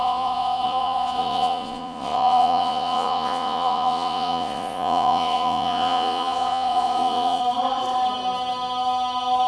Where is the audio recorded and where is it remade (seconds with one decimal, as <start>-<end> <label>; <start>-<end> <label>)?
0.0-7.4 remade; 7.4-9.5 recorded